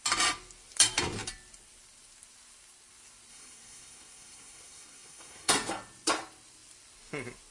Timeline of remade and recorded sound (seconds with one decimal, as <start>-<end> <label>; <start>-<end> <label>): 0.0-3.3 recorded; 3.3-5.5 remade; 5.5-7.5 recorded